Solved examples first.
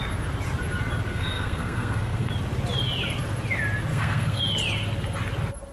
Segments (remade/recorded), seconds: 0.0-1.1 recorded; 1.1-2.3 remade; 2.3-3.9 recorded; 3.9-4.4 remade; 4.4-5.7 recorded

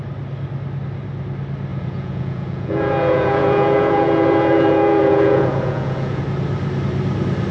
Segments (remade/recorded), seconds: 0.0-1.7 recorded; 1.7-6.2 remade; 6.2-7.5 recorded

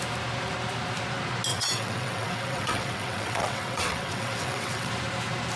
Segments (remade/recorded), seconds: 0.0-1.5 recorded; 1.5-4.9 remade; 4.9-5.6 recorded

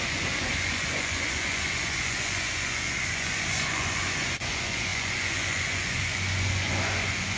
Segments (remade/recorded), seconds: 0.0-7.4 remade

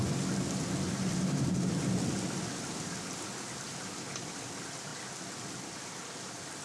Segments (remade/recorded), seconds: 0.0-6.6 recorded

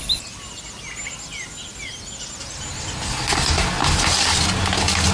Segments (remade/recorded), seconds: 0.0-5.1 recorded

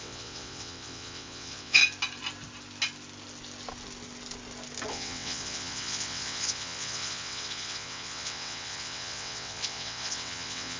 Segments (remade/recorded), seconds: 0.0-1.8 remade; 1.8-4.9 recorded; 4.9-10.8 remade